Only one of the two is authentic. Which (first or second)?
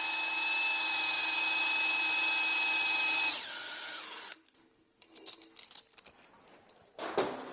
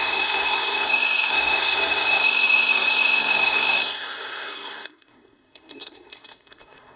first